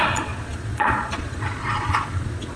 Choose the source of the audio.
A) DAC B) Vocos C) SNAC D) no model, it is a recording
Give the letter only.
B